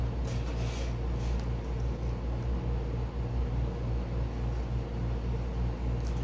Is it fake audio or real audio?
real